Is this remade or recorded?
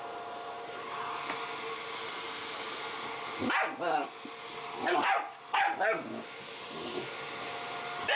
recorded